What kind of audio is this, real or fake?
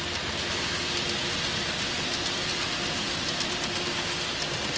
real